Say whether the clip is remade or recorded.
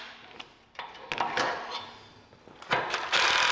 recorded